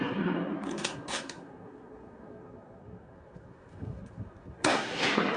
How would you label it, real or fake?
fake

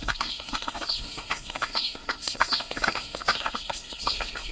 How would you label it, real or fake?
fake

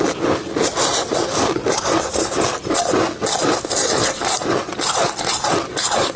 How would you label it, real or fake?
real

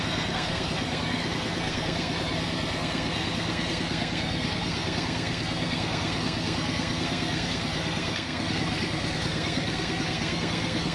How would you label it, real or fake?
fake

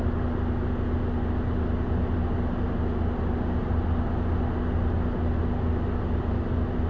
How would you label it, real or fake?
real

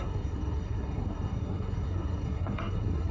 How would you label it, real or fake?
fake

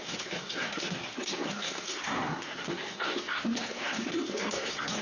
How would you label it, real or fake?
fake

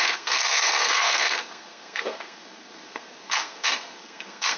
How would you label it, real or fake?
fake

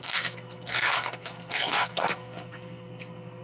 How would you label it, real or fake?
fake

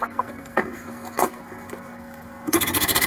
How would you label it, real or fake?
fake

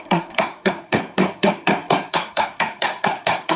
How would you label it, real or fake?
fake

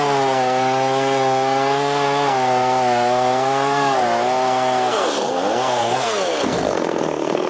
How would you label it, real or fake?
fake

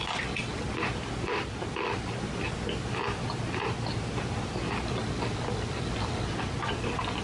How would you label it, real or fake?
real